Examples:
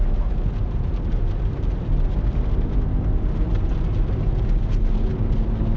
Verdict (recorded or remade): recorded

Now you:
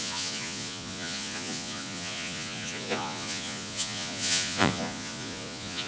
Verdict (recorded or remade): remade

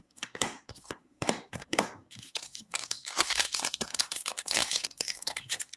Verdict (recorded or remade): remade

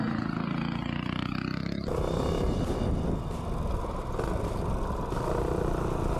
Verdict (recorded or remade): recorded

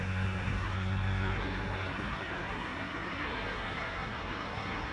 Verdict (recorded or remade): remade